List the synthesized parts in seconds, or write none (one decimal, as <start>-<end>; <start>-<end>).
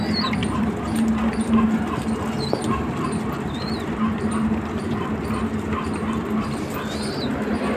none